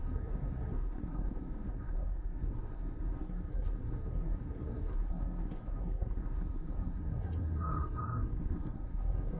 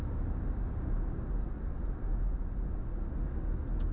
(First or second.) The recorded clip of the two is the second